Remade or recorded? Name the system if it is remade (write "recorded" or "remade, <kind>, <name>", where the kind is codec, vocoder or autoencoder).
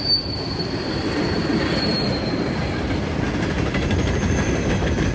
remade, vocoder, BigVGAN v2